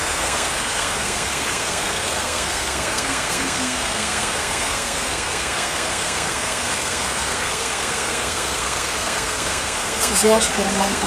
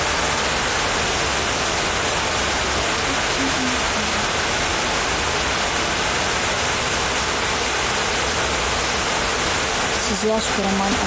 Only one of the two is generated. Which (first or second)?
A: first